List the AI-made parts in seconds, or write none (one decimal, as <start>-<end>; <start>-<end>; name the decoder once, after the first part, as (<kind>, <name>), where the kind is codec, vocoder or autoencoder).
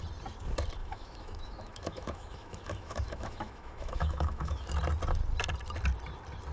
0.8-4.7 (autoencoder, DAC-VAE)